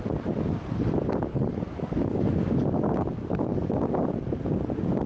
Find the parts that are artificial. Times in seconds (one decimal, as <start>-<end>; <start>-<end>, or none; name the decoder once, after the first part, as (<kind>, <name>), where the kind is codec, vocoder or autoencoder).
1.3-4.4 (codec, DAC)